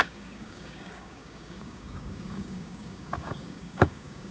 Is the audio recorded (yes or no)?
no